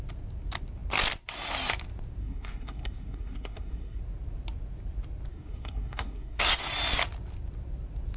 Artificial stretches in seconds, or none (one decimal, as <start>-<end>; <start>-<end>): 2.2-4.0; 5.3-6.6